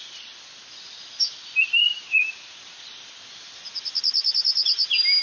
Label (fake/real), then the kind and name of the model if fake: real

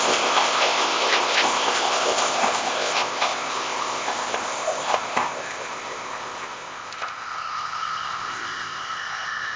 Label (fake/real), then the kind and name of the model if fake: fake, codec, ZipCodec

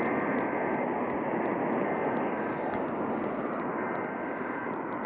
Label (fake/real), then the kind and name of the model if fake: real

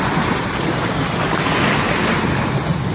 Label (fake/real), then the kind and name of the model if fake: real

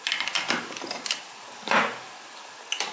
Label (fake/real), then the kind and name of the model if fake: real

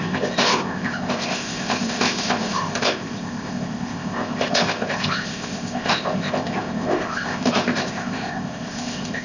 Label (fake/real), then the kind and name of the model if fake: fake, codec, ZipCodec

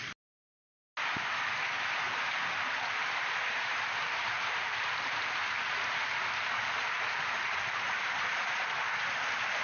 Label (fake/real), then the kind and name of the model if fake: real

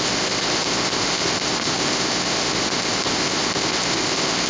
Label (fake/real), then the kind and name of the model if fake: fake, codec, ZipCodec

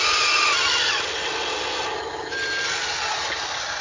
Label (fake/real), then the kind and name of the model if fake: real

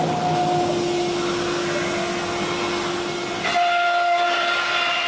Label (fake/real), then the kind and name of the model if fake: real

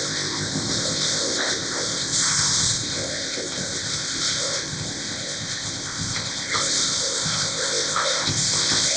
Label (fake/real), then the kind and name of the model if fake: fake, codec, ZipCodec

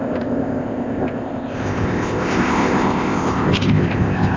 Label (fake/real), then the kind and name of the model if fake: fake, codec, ZipCodec